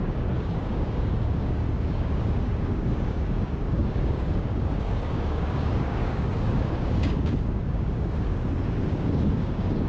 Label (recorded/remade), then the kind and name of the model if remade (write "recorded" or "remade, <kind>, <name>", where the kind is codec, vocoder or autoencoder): remade, codec, DAC